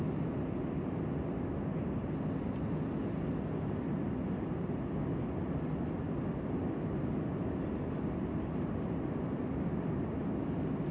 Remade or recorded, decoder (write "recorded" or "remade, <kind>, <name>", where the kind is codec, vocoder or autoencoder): recorded